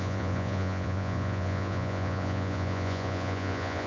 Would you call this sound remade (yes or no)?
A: yes